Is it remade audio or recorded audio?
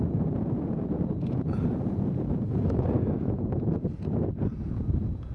remade